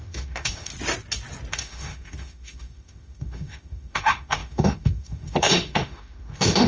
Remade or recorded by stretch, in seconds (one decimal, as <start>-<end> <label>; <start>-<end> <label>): 0.0-0.7 remade; 0.7-1.5 recorded; 1.5-6.7 remade